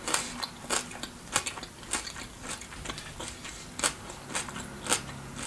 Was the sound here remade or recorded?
recorded